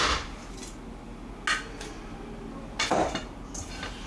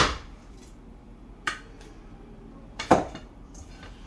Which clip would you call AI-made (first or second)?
second